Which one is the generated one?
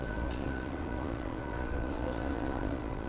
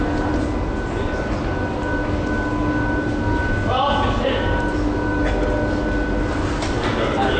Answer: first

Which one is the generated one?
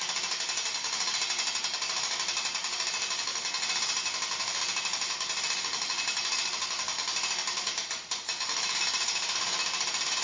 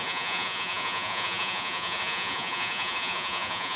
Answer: second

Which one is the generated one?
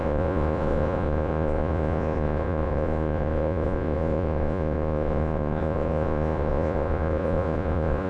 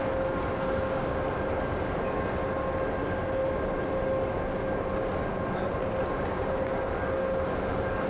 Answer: first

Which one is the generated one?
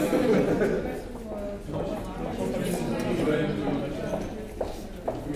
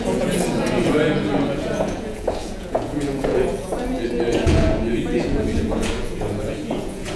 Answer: second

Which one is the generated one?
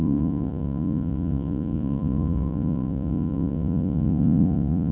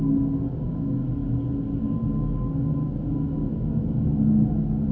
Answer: first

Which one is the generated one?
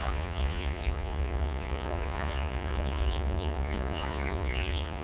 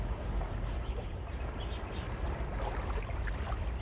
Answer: first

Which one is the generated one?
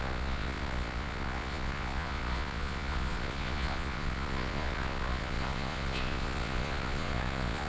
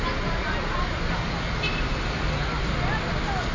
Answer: first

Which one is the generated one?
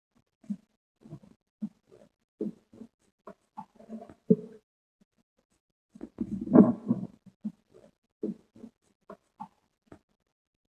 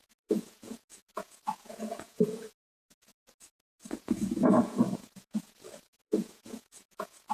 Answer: second